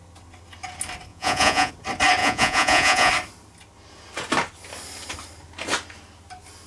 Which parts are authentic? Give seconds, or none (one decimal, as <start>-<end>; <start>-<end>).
0.0-1.1; 1.7-2.2; 3.1-6.7